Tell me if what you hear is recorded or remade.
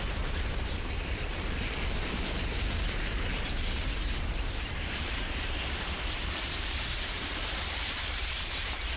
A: remade